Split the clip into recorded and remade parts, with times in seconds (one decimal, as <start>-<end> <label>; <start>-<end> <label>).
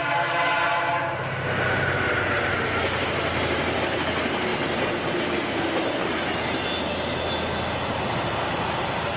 0.0-9.2 recorded